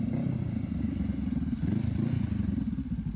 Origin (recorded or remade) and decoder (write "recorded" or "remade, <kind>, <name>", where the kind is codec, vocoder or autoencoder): recorded